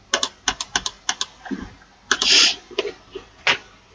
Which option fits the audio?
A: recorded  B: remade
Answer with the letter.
A